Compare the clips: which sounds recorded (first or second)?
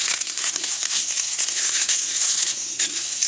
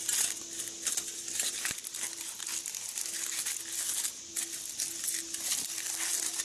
second